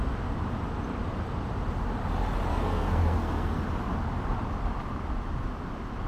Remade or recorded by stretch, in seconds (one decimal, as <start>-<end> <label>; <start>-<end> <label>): 0.0-2.5 recorded; 2.5-3.6 remade; 3.6-6.1 recorded